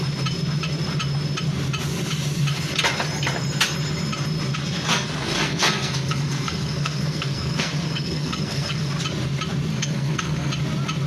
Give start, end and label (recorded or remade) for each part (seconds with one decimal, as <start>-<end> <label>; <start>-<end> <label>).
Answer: 0.0-4.9 recorded; 4.9-8.9 remade; 8.9-9.7 recorded; 9.7-10.5 remade; 10.5-11.1 recorded

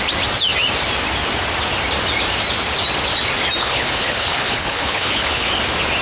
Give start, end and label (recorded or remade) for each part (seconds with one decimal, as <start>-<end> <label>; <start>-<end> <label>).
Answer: 0.0-3.6 recorded; 3.6-5.5 remade; 5.5-6.0 recorded

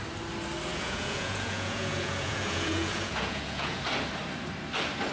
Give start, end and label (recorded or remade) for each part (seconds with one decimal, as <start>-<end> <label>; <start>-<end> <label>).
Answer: 0.0-0.7 recorded; 0.7-3.8 remade; 3.8-5.1 recorded

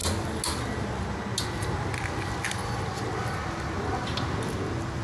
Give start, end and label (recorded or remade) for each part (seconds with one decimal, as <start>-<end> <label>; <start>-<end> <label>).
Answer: 0.0-5.0 recorded

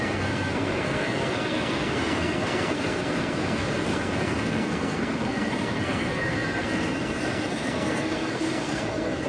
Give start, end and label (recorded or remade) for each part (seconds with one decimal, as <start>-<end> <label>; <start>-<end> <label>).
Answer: 0.0-9.3 remade

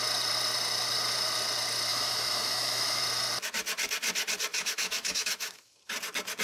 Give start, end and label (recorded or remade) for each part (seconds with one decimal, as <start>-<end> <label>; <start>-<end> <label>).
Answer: 0.0-1.9 recorded; 1.9-3.0 remade; 3.0-4.5 recorded; 4.5-5.8 remade; 5.8-6.4 recorded